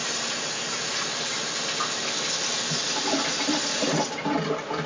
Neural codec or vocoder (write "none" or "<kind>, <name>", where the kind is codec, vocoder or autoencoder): none